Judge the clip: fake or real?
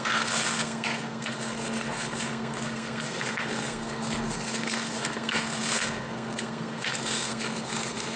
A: fake